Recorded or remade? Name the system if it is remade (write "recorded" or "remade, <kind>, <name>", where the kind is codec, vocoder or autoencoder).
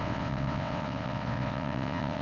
remade, vocoder, WaveNeXt